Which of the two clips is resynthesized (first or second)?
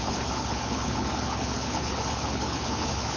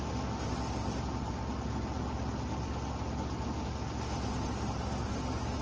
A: first